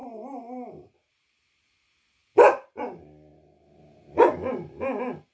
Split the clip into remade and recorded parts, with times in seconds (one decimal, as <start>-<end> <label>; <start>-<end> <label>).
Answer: 0.0-1.1 remade; 1.1-5.3 recorded